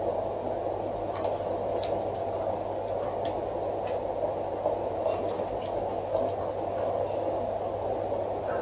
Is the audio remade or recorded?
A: recorded